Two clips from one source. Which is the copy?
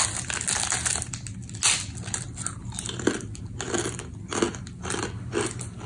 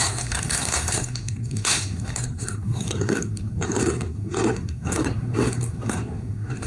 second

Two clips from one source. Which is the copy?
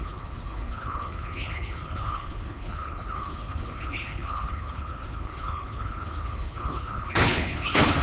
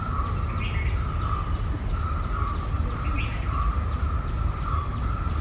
first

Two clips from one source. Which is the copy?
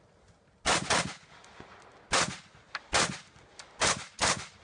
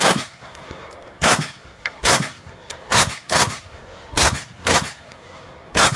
second